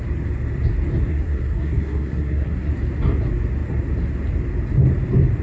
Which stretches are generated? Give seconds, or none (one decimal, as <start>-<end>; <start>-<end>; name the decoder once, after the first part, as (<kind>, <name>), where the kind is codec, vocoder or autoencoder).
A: 1.1-2.7 (codec, SNAC)

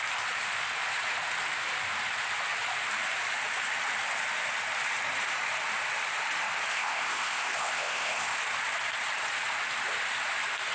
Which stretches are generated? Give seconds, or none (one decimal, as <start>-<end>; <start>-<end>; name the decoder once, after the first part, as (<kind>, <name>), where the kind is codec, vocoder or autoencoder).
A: 6.7-8.4 (codec, ZipCodec)

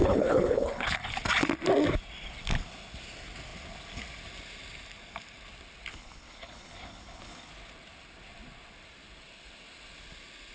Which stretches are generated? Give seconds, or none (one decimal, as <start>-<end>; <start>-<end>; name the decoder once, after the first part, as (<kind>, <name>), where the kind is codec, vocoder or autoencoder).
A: 0.0-1.1 (codec, HILCodec); 5.9-7.5